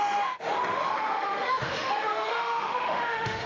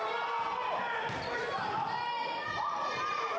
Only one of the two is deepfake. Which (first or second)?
first